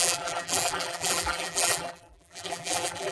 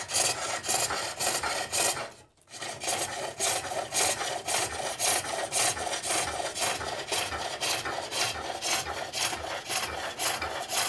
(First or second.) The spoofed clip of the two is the first